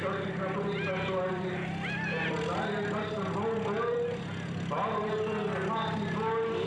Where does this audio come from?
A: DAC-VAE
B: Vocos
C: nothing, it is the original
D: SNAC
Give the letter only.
C